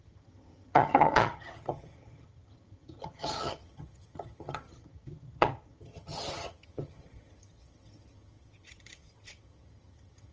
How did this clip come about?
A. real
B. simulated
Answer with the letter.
B